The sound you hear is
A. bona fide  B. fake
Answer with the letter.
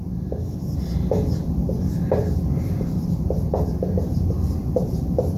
B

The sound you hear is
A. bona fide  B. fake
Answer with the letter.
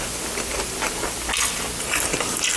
A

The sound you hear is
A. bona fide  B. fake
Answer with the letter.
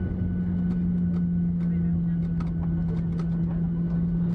A